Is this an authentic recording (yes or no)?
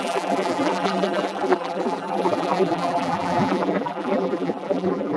no